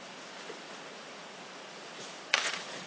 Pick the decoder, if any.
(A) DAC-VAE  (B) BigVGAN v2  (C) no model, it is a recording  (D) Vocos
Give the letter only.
D